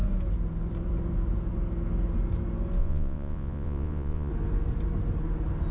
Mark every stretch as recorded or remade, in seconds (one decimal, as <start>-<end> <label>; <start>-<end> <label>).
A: 0.0-2.8 recorded; 2.8-4.3 remade; 4.3-5.7 recorded